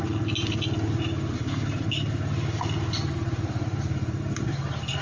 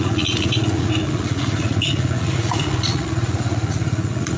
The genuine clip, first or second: first